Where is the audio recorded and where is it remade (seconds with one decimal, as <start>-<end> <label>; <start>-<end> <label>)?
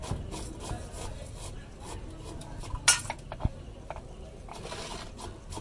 0.0-5.6 recorded